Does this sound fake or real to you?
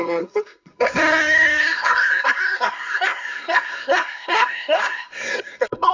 fake